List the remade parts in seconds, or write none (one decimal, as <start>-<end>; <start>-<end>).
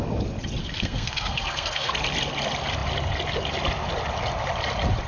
0.6-1.9